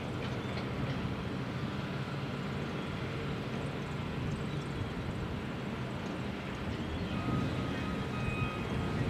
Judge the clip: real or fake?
real